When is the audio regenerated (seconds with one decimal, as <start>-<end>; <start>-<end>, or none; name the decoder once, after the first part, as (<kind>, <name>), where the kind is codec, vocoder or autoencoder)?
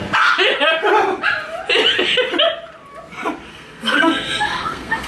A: 3.5-5.1 (codec, SNAC)